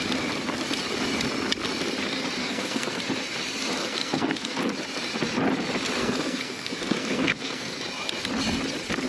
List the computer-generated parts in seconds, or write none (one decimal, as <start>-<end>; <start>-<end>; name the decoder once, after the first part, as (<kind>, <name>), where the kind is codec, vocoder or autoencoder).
2.4-3.0 (codec, SNAC); 3.8-4.6; 6.0-7.8

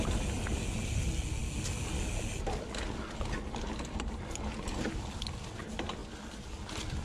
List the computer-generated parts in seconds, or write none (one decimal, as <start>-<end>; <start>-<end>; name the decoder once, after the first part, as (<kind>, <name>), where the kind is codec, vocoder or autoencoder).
none

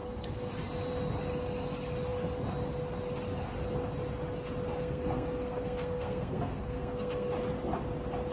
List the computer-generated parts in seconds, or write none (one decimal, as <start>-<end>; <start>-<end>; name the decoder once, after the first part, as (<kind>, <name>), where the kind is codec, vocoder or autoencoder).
0.0-0.5 (codec, SNAC); 4.8-7.3

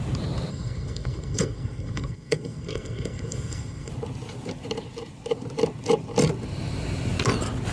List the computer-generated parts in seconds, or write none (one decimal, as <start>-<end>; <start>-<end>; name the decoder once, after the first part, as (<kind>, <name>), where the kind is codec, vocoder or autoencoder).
0.5-3.9 (codec, SNAC)

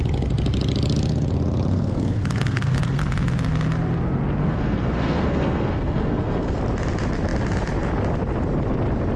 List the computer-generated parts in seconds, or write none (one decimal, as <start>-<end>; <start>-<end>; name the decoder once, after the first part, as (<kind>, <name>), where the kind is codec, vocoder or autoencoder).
1.7-3.0 (codec, SNAC); 4.4-6.6

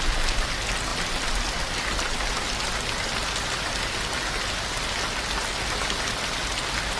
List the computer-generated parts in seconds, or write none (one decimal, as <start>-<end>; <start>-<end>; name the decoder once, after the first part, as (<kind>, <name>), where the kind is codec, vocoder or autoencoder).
none

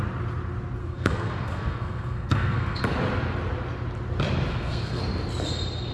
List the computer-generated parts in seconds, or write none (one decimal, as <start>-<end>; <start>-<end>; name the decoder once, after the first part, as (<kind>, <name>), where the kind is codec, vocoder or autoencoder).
0.8-2.8 (codec, SNAC); 4.5-5.0